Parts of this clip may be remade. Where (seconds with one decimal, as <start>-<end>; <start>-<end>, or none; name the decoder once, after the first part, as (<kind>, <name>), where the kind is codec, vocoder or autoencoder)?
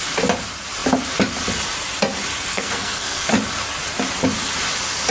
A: 2.5-3.3 (codec, SNAC)